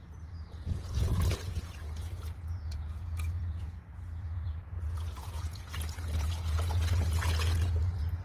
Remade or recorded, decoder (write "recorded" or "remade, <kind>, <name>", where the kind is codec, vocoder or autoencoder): remade, vocoder, Vocos